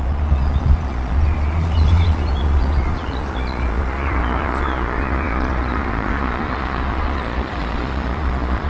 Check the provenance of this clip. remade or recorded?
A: remade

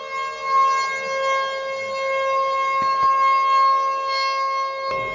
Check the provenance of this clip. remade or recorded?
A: recorded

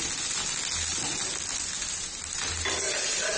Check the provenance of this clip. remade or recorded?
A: recorded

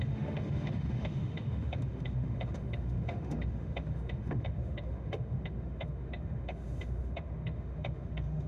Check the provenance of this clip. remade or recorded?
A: remade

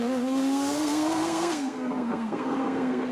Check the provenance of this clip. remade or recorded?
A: remade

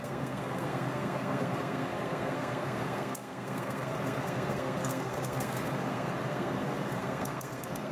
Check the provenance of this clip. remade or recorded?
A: remade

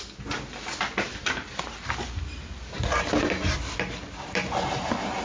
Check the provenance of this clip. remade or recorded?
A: recorded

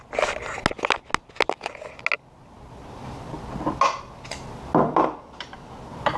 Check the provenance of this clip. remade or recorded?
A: recorded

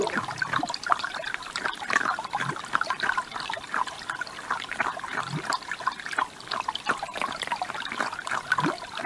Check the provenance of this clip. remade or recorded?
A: recorded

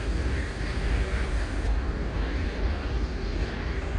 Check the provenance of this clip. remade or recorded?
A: remade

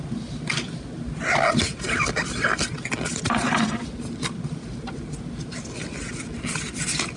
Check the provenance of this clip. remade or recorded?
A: recorded